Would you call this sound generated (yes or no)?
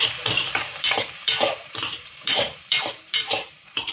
yes